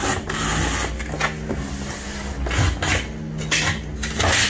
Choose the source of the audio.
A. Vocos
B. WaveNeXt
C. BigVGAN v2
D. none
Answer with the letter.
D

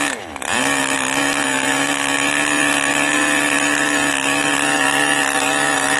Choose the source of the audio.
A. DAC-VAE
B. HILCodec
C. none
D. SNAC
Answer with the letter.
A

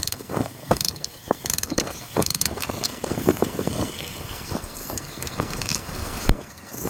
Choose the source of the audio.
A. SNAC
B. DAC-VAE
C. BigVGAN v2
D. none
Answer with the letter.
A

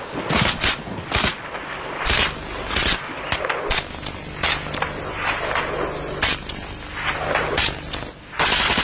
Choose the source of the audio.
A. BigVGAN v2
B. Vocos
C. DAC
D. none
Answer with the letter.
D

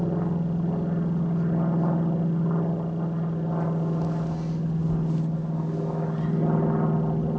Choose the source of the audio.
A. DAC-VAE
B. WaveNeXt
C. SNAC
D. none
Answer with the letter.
D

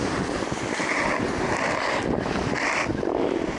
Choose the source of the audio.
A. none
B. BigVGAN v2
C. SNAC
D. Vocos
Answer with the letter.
A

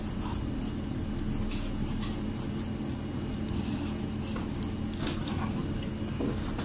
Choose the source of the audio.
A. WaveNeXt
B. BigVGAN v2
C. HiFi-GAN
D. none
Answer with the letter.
D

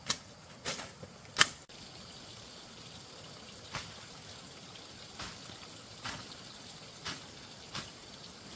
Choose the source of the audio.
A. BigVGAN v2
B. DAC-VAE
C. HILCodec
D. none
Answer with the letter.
A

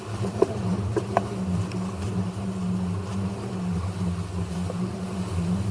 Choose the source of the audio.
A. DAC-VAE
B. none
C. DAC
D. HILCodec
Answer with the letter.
B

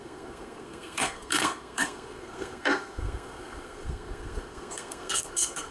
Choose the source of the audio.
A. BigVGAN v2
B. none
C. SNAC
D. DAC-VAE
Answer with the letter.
C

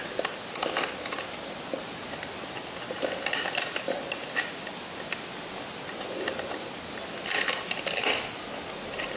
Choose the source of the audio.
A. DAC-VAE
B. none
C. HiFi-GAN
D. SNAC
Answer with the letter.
B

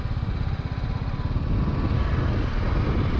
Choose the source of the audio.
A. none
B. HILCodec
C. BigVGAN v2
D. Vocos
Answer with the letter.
A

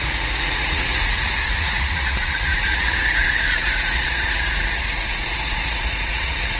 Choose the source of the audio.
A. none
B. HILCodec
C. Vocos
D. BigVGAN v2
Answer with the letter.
C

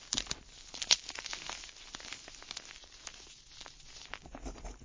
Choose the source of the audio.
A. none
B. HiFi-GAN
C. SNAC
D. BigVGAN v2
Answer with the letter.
A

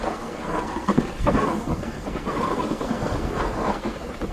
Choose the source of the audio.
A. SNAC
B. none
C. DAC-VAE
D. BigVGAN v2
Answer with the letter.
A